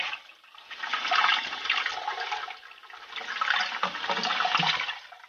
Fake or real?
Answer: real